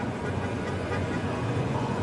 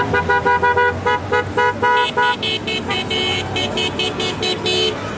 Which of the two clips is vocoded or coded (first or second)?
first